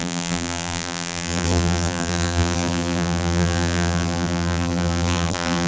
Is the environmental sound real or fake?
fake